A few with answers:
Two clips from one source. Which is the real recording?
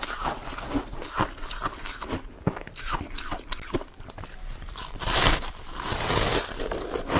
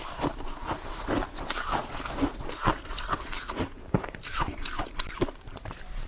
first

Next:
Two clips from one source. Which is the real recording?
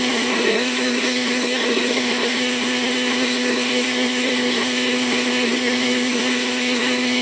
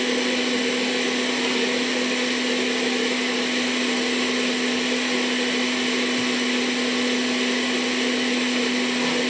second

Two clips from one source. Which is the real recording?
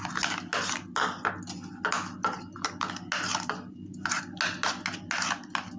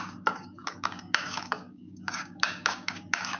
first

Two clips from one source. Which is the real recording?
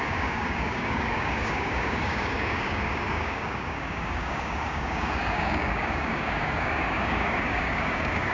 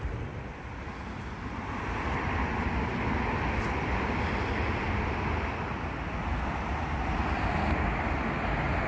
second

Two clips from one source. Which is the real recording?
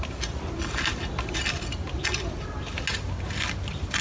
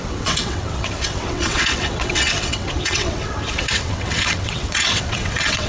first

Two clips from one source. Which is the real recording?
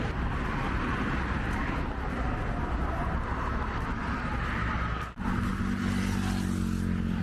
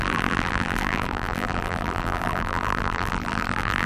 first